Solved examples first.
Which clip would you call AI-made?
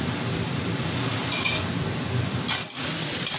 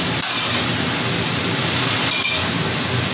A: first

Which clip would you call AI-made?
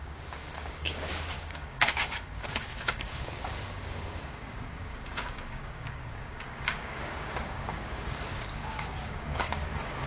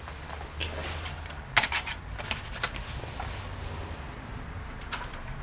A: first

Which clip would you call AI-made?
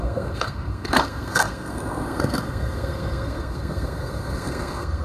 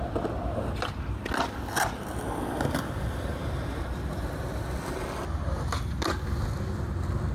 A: first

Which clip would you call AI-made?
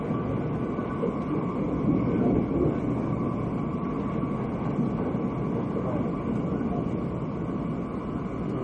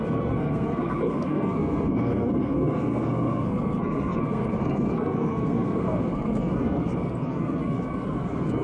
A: second